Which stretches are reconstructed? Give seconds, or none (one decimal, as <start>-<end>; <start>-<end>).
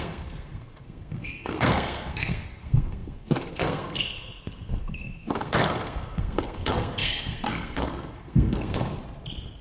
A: 0.0-9.0